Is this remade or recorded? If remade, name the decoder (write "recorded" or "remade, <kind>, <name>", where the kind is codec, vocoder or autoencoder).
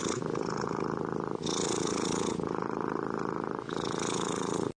recorded